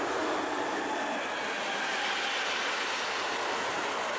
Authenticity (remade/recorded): recorded